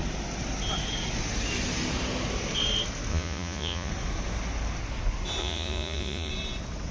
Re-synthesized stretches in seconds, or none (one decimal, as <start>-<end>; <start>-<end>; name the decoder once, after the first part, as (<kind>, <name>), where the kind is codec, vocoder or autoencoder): 3.1-3.9 (vocoder, Vocos); 5.4-6.3